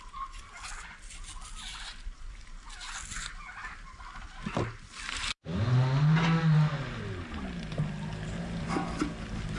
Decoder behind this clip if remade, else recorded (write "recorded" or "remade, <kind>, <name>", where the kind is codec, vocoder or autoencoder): recorded